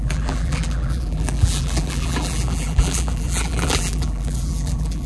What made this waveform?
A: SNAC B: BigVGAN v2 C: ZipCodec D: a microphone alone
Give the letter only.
B